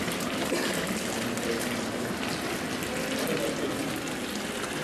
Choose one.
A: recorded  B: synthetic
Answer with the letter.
A